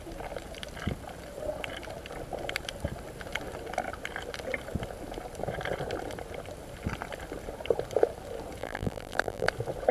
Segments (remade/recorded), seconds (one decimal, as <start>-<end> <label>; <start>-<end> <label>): 0.0-8.6 recorded; 8.6-9.5 remade; 9.5-9.9 recorded